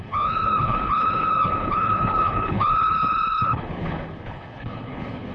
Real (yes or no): no